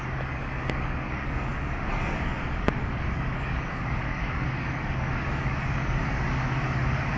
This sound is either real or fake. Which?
fake